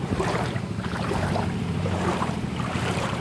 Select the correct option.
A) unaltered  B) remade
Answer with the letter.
B